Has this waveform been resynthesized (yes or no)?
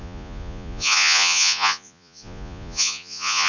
yes